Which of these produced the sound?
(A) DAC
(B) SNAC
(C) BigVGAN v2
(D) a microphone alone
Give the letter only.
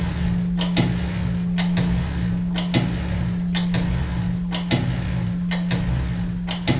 D